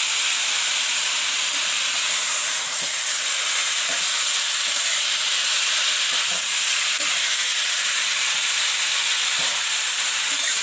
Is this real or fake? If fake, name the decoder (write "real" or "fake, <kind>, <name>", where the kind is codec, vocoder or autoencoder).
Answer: fake, vocoder, BigVGAN v2